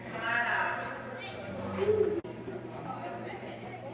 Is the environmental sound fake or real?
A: fake